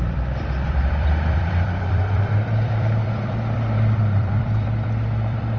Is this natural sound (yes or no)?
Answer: no